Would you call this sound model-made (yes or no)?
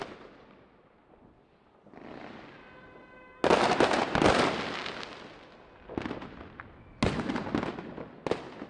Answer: no